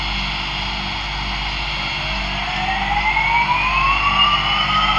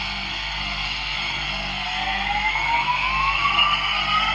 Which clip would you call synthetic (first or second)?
second